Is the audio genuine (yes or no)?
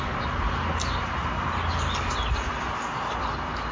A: yes